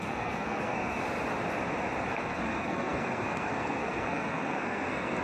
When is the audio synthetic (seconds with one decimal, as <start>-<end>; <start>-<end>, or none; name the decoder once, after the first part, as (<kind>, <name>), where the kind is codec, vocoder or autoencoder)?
0.0-1.0 (codec, SNAC); 2.1-5.2